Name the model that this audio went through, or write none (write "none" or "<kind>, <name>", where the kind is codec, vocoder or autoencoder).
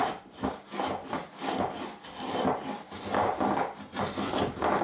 none